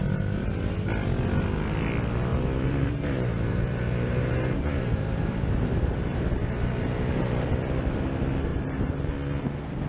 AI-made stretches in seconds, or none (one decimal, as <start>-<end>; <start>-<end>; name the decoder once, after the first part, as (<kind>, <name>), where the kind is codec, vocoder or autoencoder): 2.3-7.5 (vocoder, BigVGAN v2); 8.5-9.1